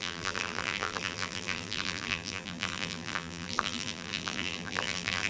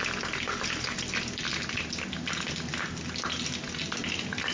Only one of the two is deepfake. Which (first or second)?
first